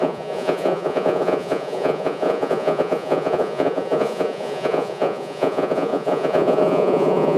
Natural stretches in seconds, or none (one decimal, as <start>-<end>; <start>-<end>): none